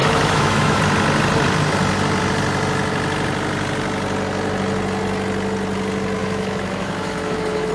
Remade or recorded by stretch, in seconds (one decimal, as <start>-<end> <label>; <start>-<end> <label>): 0.0-0.8 remade; 0.8-6.2 recorded; 6.2-7.7 remade